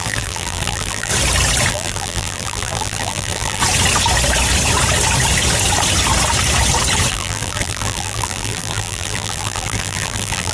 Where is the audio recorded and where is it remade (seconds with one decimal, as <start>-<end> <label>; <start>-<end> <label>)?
0.0-1.1 remade; 1.1-1.7 recorded; 1.7-3.6 remade; 3.6-7.1 recorded; 7.1-10.5 remade